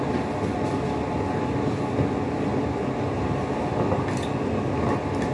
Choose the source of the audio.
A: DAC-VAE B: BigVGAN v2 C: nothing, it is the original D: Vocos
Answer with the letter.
C